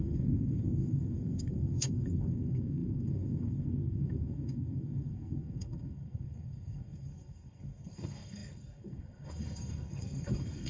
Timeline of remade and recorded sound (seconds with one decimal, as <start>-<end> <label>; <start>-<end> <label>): 0.0-10.7 remade